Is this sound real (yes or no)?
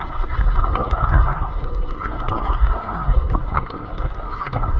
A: no